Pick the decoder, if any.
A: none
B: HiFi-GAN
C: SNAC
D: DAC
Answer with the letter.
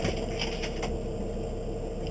A